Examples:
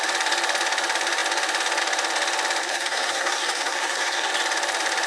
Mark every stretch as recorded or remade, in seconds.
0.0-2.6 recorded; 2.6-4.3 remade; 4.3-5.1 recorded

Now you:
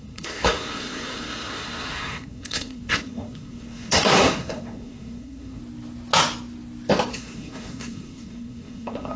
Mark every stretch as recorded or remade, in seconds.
0.0-5.6 remade; 5.6-7.1 recorded; 7.1-9.2 remade

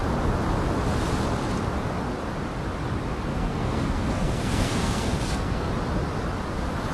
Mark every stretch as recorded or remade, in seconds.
0.0-3.3 recorded; 3.3-5.7 remade; 5.7-6.9 recorded

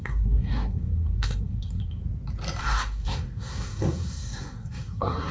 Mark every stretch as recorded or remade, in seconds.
0.0-2.0 remade; 2.0-2.6 recorded; 2.6-5.3 remade

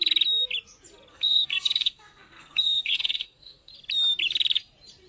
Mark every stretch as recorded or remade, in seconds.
0.0-1.1 recorded; 1.1-3.7 remade; 3.7-5.1 recorded

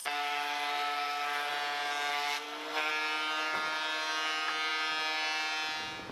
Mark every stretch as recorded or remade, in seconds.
0.0-1.5 remade; 1.5-2.1 recorded; 2.1-2.9 remade; 2.9-6.1 recorded

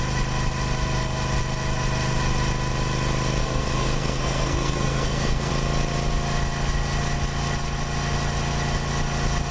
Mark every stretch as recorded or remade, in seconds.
0.0-3.4 recorded; 3.4-5.5 remade; 5.5-9.5 recorded

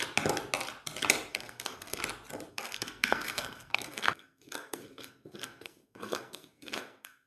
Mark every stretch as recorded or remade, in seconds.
0.0-1.3 recorded; 1.3-2.0 remade; 2.0-2.5 recorded; 2.5-7.3 remade